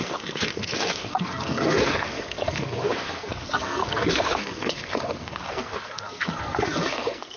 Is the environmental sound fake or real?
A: fake